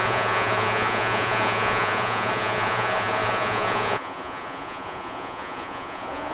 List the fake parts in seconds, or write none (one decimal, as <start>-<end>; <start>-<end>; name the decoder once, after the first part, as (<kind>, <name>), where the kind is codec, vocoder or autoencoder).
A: 0.0-6.3 (vocoder, Vocos)